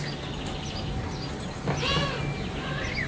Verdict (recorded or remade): recorded